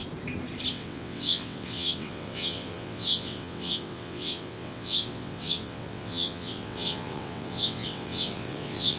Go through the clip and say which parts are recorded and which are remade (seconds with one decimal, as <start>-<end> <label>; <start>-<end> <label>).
0.0-0.7 recorded; 0.7-9.0 remade